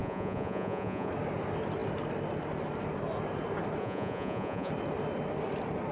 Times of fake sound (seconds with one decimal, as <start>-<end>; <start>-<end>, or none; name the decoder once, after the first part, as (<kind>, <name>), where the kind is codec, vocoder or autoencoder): 0.0-1.1 (vocoder, Vocos); 3.8-4.7